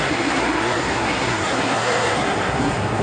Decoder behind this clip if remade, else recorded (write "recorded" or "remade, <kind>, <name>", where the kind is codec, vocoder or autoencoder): remade, codec, SNAC